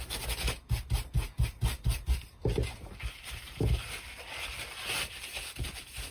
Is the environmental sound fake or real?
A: real